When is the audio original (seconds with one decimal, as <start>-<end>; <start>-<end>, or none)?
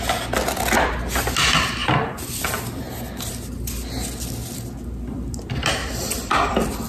0.0-1.8; 2.8-5.8; 6.5-6.9